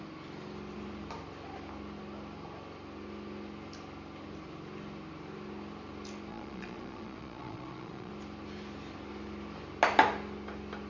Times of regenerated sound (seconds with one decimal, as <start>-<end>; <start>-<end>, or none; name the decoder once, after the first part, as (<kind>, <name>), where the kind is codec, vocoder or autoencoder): 6.3-8.1 (vocoder, Vocos)